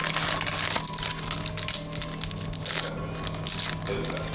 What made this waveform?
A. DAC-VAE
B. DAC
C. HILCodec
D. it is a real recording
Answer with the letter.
D